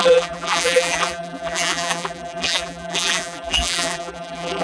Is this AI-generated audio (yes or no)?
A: yes